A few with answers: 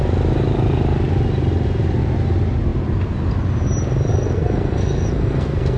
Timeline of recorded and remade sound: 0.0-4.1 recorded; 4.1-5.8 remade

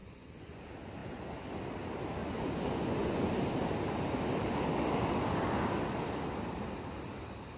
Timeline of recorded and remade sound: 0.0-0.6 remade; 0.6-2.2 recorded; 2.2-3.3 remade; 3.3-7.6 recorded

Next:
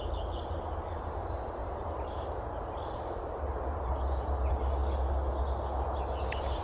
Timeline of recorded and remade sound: 0.0-1.6 recorded; 1.6-3.9 remade; 3.9-6.6 recorded

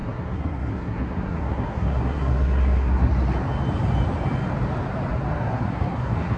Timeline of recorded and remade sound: 0.0-3.1 remade; 3.1-5.3 recorded; 5.3-6.4 remade

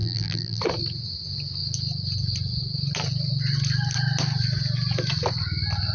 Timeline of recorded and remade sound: 0.0-0.6 remade; 0.6-5.9 recorded

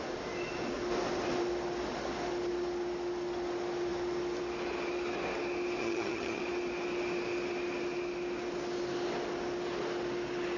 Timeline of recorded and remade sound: 0.0-5.8 recorded; 5.8-6.4 remade; 6.4-10.6 recorded

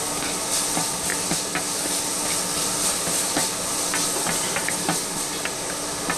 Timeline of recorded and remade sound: 0.0-6.2 recorded

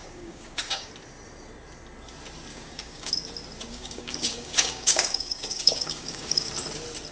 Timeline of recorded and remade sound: 0.0-0.9 remade; 0.9-2.5 recorded; 2.5-3.1 remade; 3.1-3.7 recorded; 3.7-6.5 remade; 6.5-7.1 recorded